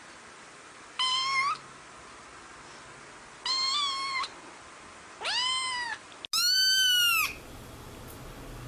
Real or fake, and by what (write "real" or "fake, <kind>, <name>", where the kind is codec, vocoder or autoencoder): real